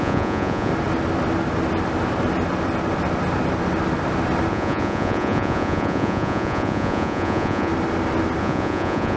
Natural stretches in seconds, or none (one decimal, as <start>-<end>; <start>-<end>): 0.7-4.5; 7.7-8.4